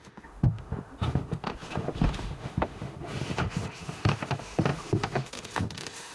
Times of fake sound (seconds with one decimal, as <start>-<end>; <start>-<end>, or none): 0.0-6.1